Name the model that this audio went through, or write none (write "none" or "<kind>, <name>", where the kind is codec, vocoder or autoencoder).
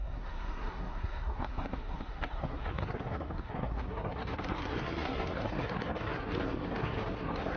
codec, SNAC